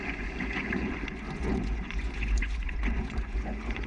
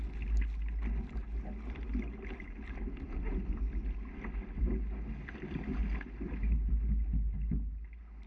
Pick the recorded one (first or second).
second